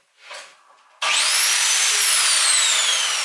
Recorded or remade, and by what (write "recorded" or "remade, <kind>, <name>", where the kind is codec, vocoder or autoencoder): recorded